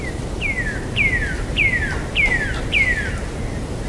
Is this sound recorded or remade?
recorded